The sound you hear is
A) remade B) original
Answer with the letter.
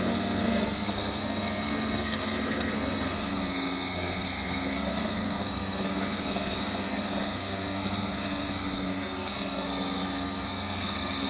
A